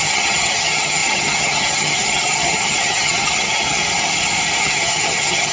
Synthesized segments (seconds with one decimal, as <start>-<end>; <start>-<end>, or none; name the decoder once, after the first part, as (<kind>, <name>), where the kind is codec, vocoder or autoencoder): 0.0-3.8 (vocoder, HiFi-GAN); 4.6-5.5